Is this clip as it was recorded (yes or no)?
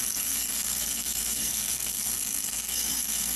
no